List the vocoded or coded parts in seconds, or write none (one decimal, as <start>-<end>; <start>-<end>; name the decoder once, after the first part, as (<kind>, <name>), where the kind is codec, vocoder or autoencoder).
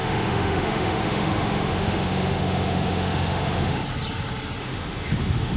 0.0-3.8 (autoencoder, DAC-VAE); 4.6-5.6